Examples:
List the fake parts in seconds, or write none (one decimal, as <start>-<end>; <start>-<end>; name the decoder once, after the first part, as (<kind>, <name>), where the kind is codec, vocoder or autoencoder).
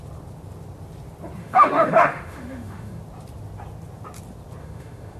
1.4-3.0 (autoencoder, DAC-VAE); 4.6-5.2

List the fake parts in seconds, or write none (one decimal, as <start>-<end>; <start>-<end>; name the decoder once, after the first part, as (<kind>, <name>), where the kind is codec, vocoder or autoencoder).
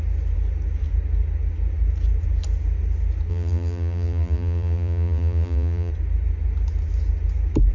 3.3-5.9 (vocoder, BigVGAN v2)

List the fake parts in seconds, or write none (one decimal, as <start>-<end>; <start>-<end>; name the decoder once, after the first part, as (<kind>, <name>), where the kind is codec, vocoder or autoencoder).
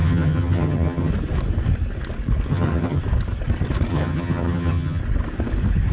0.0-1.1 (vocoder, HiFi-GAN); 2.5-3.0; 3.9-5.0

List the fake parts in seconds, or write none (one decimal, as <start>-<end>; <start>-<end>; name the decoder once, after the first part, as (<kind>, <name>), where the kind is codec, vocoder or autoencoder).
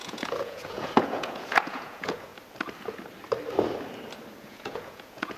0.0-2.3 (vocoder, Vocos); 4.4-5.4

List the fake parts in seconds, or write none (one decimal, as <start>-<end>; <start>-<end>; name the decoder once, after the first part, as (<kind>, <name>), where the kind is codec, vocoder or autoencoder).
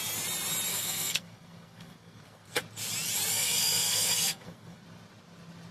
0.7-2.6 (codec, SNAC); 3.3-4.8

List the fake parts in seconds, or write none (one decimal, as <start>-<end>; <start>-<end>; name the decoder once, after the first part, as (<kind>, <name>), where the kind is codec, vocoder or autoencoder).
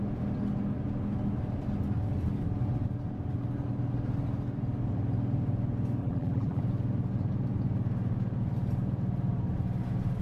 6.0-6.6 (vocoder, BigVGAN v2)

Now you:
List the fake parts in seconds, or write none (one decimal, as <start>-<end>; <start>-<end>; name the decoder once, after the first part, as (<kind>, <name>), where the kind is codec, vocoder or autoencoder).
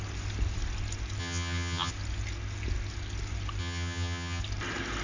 1.2-1.9 (vocoder, HiFi-GAN); 3.6-4.4